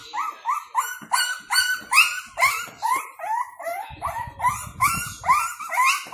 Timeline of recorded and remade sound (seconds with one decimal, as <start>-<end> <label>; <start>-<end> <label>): 0.0-6.1 recorded